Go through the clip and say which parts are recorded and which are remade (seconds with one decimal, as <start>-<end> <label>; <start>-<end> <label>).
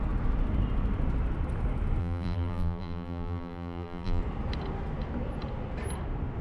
0.0-2.0 recorded; 2.0-4.2 remade; 4.2-6.4 recorded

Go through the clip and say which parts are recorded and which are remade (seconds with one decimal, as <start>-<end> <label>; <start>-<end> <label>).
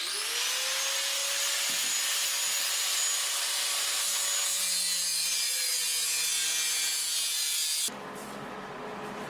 0.0-5.1 recorded; 5.1-5.7 remade; 5.7-9.3 recorded